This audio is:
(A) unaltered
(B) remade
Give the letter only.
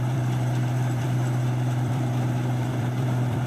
B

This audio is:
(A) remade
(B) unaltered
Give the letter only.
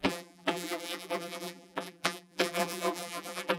A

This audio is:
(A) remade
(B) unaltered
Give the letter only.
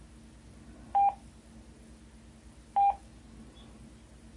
B